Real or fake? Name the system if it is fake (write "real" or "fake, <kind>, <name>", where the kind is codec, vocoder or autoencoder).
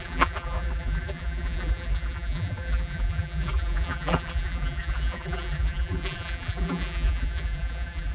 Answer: fake, vocoder, BigVGAN v2